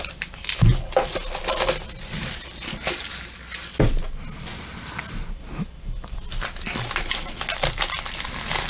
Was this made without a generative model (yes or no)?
yes